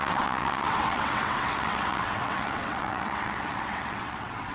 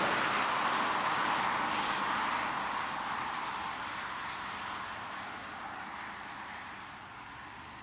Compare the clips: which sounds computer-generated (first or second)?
first